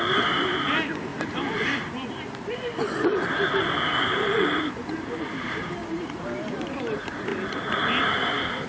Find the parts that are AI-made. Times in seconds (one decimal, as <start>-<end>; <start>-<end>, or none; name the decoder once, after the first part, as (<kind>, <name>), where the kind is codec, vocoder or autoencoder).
0.0-7.3 (vocoder, BigVGAN v2)